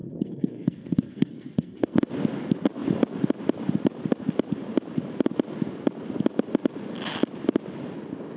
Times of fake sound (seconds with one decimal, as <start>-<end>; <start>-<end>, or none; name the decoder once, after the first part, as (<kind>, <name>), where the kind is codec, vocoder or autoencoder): 0.0-2.1 (codec, SNAC)